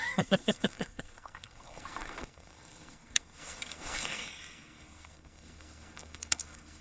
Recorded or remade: remade